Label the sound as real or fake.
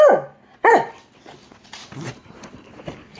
real